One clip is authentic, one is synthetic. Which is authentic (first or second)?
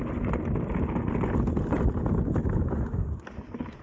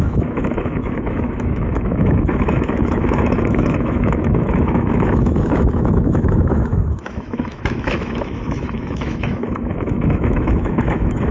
first